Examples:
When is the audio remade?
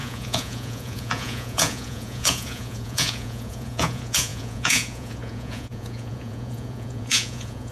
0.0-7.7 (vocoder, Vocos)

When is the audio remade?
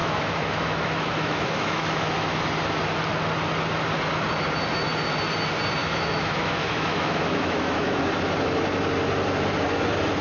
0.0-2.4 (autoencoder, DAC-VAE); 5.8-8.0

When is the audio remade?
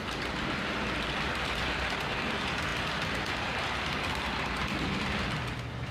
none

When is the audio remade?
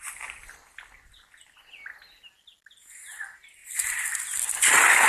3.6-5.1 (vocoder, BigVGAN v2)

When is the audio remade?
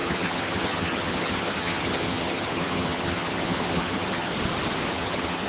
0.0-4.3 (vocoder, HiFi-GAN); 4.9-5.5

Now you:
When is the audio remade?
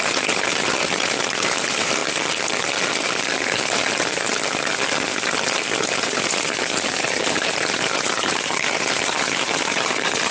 0.0-2.0 (vocoder, BigVGAN v2); 6.0-10.3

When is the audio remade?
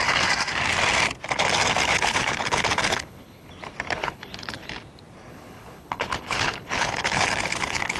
1.9-3.5 (codec, HILCodec); 4.0-4.7; 5.3-8.0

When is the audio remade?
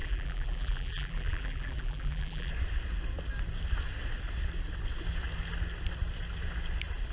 0.0-2.5 (vocoder, BigVGAN v2)